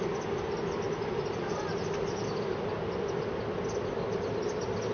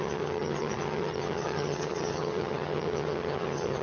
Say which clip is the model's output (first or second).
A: second